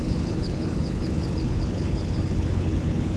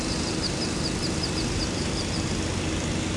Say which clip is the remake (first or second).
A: first